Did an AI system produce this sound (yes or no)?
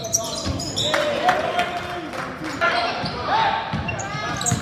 no